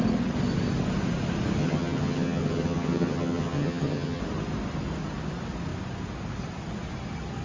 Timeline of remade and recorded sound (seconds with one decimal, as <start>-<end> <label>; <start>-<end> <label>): 0.0-1.6 recorded; 1.6-4.2 remade; 4.2-7.4 recorded